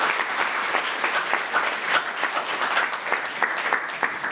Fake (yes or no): no